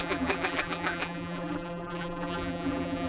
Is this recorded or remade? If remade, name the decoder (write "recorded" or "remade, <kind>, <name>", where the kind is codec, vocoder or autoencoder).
remade, vocoder, BigVGAN v2